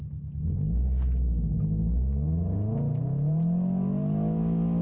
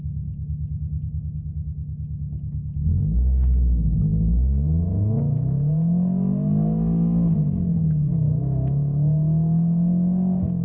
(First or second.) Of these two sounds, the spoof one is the second